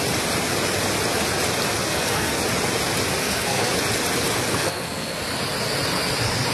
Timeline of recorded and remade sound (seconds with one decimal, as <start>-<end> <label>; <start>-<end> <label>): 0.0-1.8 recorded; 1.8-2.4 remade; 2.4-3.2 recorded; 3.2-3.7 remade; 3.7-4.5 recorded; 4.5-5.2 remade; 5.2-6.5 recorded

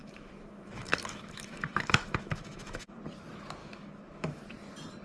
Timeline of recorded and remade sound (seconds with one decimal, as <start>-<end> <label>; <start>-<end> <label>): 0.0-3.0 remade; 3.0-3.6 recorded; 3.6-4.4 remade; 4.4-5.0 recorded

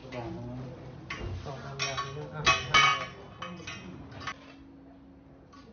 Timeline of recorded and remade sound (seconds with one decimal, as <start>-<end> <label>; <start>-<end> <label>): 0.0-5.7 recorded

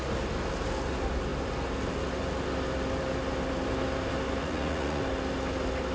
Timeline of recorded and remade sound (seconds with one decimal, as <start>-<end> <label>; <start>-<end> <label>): 0.0-4.4 recorded; 4.4-5.0 remade; 5.0-5.9 recorded